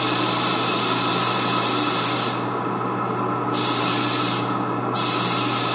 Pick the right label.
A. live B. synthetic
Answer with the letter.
A